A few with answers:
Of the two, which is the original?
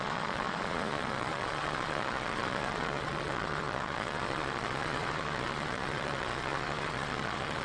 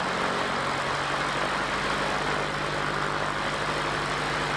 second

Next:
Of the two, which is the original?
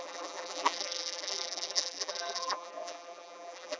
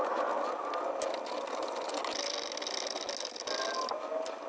second